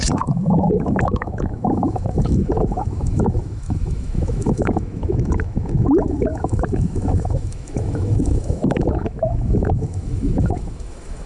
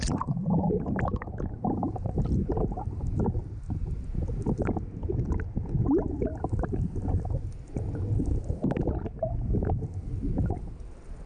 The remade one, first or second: first